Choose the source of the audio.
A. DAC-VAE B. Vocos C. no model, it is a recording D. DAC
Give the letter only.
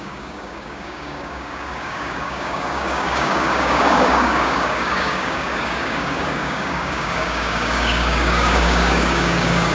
D